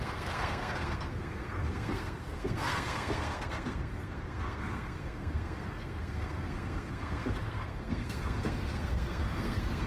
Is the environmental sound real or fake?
fake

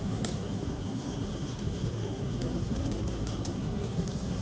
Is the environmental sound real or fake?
fake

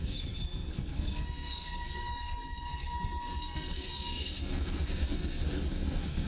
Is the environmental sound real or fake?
fake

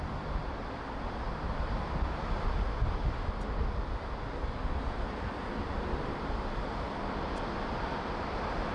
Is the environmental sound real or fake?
real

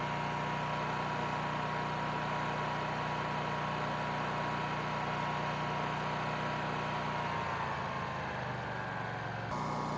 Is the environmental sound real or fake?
real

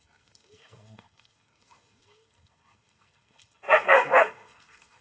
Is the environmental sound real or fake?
fake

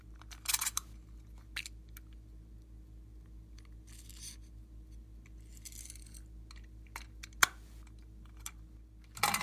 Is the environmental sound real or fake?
real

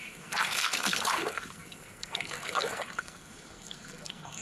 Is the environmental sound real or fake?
fake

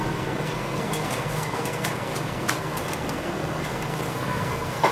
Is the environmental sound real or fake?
fake